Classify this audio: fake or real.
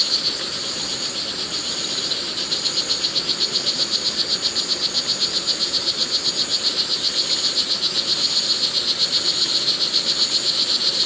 real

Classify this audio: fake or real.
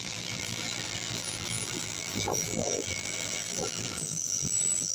fake